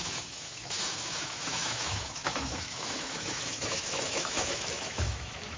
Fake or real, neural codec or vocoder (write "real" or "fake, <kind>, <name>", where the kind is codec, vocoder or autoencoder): fake, autoencoder, DAC-VAE